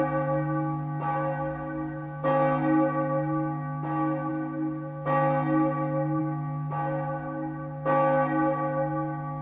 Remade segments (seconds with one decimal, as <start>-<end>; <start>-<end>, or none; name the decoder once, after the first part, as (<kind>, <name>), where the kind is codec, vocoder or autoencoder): none